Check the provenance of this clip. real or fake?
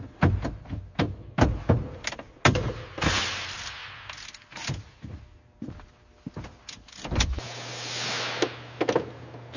real